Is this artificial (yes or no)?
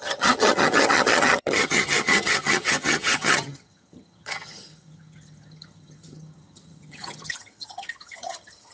yes